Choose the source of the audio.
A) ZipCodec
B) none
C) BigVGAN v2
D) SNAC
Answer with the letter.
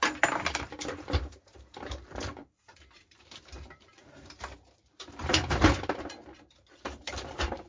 C